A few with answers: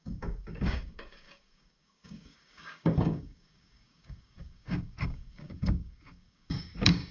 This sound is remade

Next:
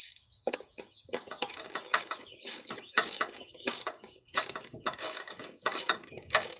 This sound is remade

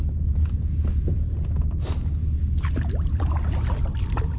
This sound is recorded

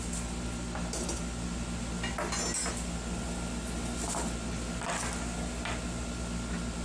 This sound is recorded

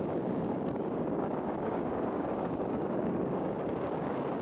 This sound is remade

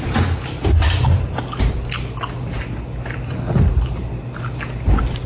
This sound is recorded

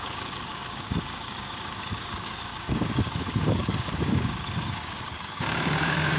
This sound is remade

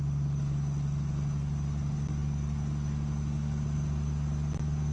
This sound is recorded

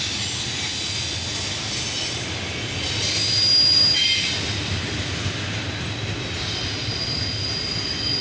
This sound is recorded